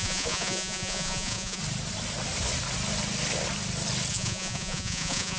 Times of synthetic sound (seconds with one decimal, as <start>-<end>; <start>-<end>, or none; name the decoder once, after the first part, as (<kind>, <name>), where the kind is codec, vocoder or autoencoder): 0.0-1.6 (vocoder, Vocos); 4.1-5.4